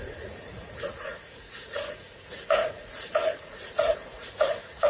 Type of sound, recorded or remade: remade